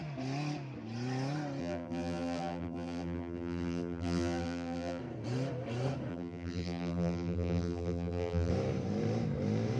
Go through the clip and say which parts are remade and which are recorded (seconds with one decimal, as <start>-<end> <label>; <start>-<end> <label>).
0.0-1.6 recorded; 1.6-5.0 remade; 5.0-6.1 recorded; 6.1-8.5 remade; 8.5-9.8 recorded